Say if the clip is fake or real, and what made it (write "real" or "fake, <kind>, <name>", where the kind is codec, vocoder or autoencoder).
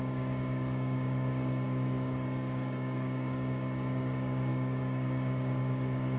fake, codec, DAC